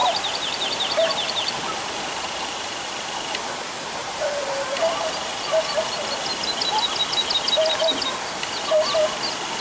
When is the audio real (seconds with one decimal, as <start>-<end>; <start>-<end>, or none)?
4.8-9.6